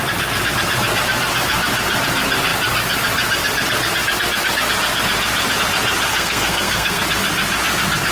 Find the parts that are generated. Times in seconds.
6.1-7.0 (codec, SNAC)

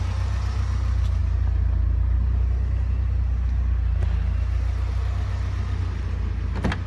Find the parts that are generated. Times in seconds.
none

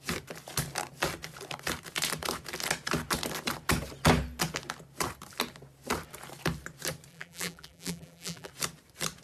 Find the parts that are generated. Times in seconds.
7.1-8.5 (vocoder, BigVGAN v2)

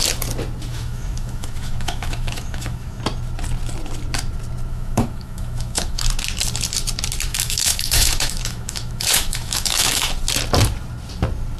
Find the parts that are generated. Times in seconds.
0.7-3.0 (autoencoder, DAC-VAE); 4.7-6.0; 7.3-10.1

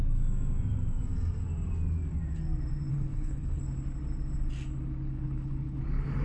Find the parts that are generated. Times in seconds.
2.9-3.6 (codec, HILCodec); 5.1-5.8